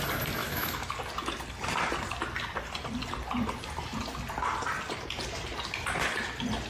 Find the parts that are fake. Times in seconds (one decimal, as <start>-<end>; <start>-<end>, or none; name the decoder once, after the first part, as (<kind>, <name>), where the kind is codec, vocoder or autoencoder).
0.4-0.9 (autoencoder, DAC-VAE)